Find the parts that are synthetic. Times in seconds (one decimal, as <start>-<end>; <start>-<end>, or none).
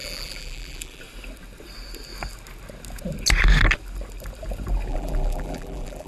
0.0-1.0; 4.9-6.1